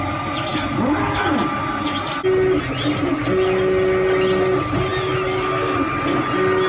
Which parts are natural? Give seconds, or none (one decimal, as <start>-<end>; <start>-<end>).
0.0-6.7